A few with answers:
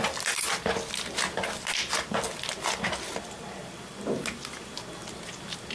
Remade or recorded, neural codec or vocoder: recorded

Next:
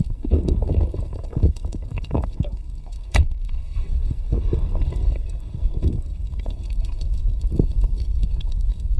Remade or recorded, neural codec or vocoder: remade, codec, SNAC